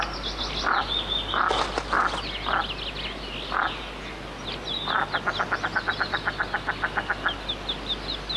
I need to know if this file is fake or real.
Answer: real